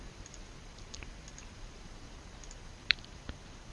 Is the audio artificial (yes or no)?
no